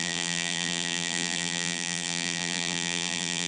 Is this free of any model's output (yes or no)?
no